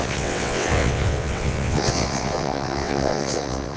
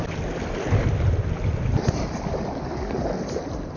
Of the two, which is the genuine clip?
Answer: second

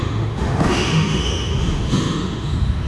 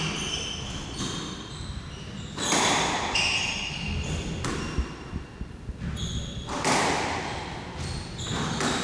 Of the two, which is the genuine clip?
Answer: second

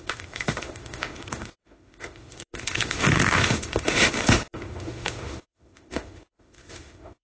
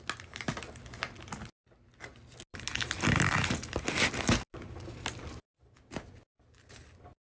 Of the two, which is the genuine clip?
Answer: second